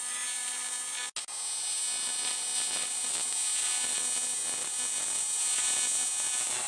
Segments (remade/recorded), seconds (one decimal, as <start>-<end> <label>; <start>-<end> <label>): 0.0-6.7 recorded